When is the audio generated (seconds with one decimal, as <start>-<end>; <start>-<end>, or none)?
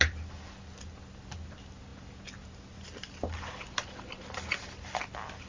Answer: none